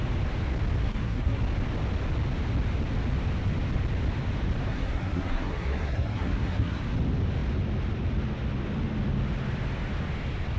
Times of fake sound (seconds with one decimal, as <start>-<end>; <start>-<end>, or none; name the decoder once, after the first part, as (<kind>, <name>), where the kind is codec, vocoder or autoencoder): 0.8-1.4 (codec, SNAC); 4.7-6.8